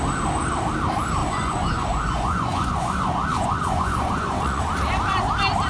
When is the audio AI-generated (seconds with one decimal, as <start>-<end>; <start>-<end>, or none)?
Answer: 1.2-4.6